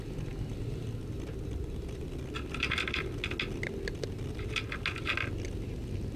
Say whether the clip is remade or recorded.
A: recorded